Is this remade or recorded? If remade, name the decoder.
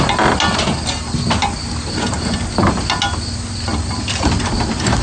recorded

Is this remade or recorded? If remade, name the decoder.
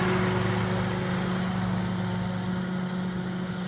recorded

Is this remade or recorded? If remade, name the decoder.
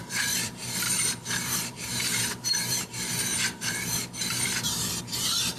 remade, vocoder, BigVGAN v2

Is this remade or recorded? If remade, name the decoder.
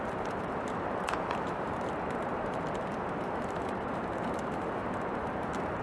remade, vocoder, BigVGAN v2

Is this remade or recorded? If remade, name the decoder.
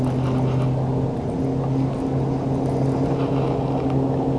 recorded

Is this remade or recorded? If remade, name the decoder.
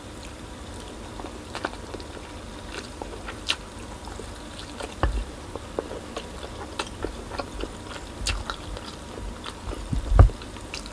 remade, vocoder, BigVGAN v2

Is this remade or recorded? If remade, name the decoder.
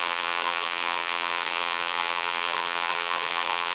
remade, vocoder, BigVGAN v2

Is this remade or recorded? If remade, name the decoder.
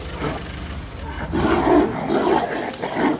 recorded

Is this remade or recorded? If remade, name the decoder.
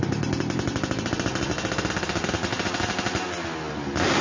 recorded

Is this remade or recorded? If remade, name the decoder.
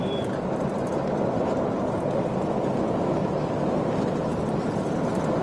recorded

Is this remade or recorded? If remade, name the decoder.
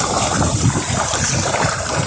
remade, vocoder, BigVGAN v2